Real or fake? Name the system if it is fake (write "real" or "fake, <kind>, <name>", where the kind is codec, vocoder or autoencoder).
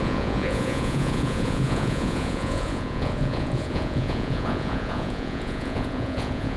fake, vocoder, Vocos